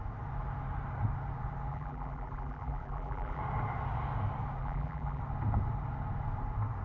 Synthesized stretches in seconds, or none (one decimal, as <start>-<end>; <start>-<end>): 1.7-3.4; 4.6-5.2